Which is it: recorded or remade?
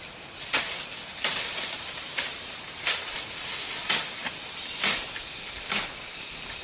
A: recorded